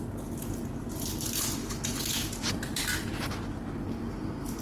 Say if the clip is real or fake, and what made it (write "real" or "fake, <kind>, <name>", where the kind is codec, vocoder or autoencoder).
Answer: real